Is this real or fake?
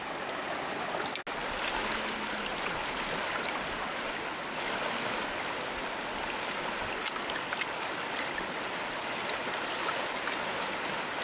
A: real